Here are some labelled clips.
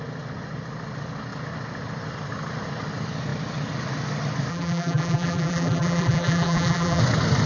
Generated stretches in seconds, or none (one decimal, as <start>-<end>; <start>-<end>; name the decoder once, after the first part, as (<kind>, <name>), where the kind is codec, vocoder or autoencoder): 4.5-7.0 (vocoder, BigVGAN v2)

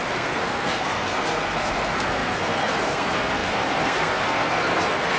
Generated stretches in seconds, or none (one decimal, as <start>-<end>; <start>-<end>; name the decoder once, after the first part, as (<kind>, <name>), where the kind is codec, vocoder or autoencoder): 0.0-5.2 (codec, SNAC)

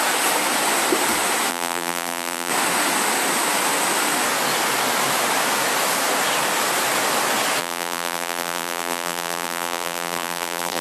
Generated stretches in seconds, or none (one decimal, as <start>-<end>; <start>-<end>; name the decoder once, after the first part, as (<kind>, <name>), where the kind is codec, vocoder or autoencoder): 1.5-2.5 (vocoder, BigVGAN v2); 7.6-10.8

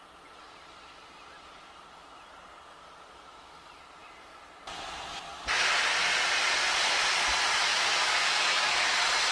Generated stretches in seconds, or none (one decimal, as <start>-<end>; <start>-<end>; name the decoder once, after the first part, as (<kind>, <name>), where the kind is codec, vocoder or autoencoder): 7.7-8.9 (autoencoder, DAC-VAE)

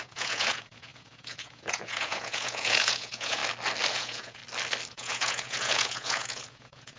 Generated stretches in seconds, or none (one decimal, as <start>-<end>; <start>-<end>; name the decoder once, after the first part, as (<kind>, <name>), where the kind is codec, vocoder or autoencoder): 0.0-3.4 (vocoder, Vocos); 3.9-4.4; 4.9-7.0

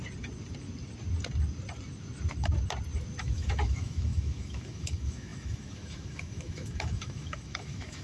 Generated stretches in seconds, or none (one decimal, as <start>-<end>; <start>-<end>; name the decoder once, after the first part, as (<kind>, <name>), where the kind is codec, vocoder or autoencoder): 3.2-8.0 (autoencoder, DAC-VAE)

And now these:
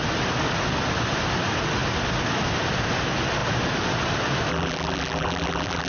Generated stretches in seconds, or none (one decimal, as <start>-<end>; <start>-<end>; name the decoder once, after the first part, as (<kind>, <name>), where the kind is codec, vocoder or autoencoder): 4.5-5.9 (vocoder, BigVGAN v2)